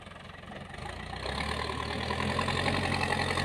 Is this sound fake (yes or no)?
no